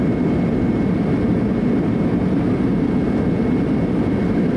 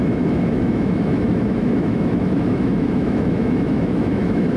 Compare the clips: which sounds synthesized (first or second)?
second